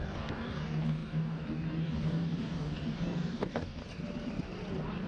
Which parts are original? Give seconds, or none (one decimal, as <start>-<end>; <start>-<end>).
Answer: 3.8-5.1